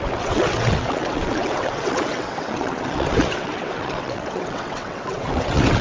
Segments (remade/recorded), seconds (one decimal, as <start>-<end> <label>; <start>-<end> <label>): 0.0-5.8 remade